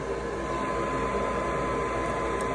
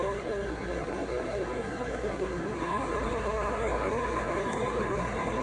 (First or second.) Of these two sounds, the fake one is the second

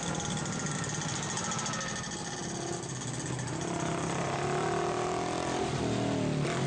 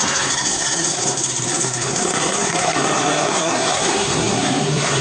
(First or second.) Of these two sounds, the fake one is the second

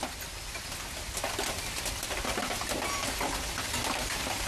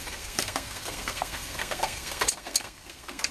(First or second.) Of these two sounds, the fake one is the second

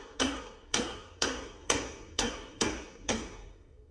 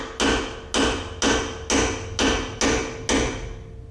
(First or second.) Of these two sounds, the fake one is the first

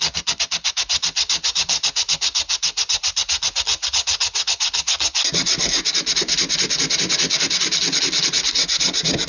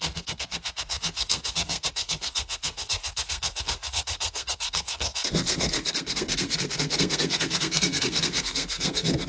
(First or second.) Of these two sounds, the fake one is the second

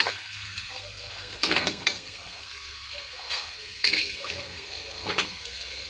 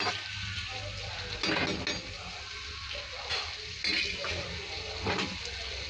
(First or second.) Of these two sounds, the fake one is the first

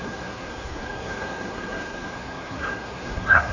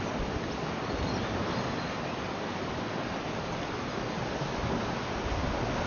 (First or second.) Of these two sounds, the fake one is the first